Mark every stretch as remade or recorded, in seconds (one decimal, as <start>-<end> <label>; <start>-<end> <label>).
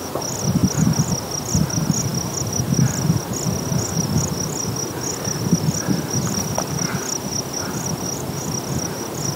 0.0-9.4 recorded